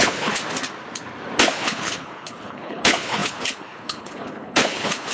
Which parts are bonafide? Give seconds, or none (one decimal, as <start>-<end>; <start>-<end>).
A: 0.4-1.5